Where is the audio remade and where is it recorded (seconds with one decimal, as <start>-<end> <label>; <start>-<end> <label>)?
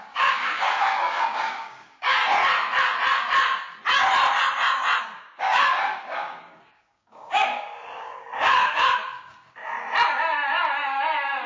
0.0-2.2 remade; 2.2-5.0 recorded; 5.0-9.6 remade; 9.6-11.5 recorded